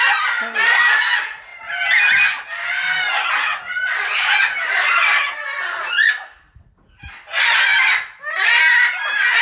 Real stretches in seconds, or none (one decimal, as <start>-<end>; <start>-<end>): 0.0-9.4